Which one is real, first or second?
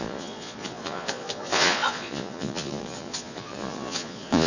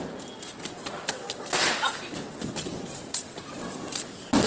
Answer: second